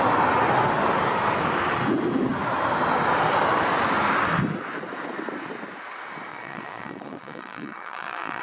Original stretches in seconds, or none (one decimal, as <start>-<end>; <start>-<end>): 0.0-6.3